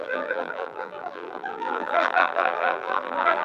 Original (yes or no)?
no